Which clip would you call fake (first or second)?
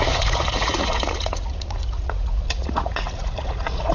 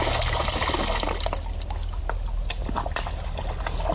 first